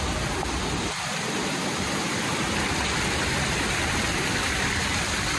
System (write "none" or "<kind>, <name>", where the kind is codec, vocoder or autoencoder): none